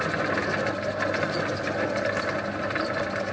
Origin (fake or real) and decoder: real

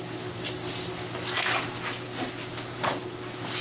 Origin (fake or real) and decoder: real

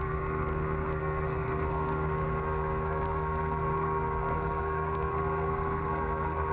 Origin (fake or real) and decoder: fake, codec, SNAC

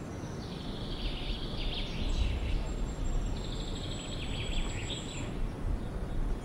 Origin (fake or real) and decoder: real